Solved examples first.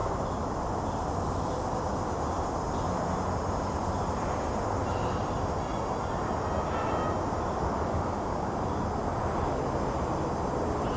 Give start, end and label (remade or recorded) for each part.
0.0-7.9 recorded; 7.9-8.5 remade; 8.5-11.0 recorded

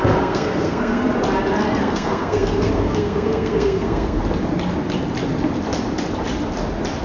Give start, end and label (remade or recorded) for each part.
0.0-1.0 remade; 1.0-1.8 recorded; 1.8-4.2 remade; 4.2-7.0 recorded

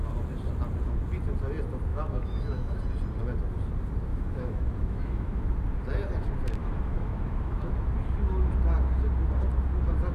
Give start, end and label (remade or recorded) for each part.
0.0-1.9 recorded; 1.9-2.8 remade; 2.8-4.1 recorded; 4.1-5.4 remade; 5.4-6.6 recorded; 6.6-7.9 remade; 7.9-10.1 recorded